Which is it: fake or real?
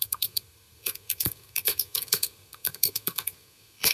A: fake